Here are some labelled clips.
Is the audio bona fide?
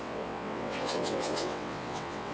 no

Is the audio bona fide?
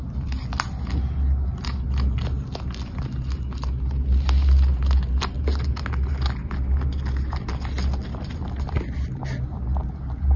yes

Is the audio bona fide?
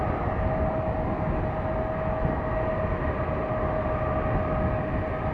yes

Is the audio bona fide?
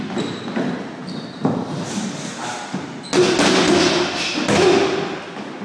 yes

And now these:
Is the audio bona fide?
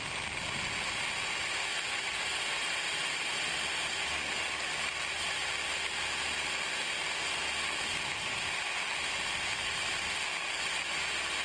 yes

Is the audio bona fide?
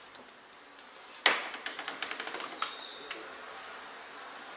yes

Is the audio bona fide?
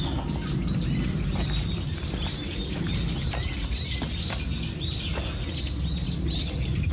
yes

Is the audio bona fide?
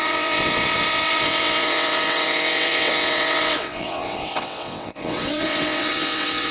no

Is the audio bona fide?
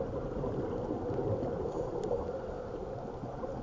yes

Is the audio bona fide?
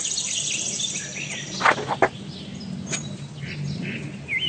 yes